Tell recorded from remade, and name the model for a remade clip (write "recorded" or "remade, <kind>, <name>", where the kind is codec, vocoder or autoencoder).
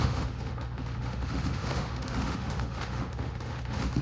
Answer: remade, autoencoder, DAC-VAE